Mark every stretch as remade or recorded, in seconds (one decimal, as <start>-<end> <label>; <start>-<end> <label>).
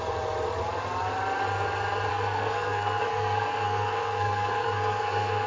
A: 0.0-2.1 recorded; 2.1-5.5 remade